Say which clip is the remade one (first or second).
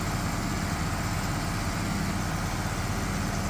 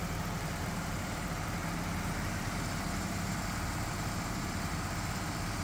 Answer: second